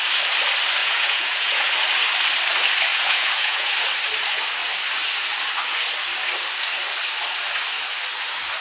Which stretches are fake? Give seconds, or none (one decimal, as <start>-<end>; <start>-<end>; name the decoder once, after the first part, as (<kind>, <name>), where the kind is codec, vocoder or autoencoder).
0.8-1.7 (vocoder, Vocos); 2.9-3.7